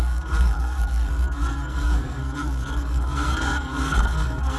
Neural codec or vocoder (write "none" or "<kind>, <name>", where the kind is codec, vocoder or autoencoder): codec, SNAC